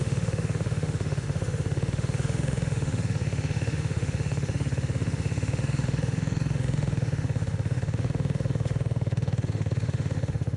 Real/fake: fake